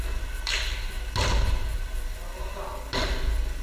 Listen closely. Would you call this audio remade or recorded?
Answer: recorded